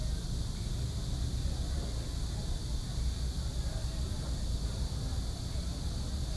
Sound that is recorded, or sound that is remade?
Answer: recorded